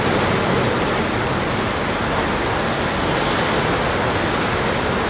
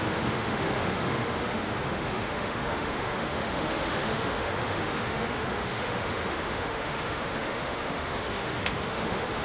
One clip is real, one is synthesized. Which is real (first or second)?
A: first